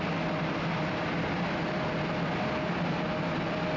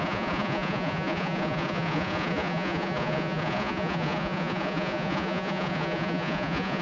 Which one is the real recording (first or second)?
first